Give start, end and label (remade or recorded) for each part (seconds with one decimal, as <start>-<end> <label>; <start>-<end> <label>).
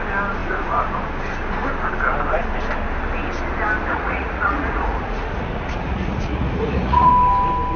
0.0-3.9 recorded; 3.9-7.1 remade; 7.1-7.8 recorded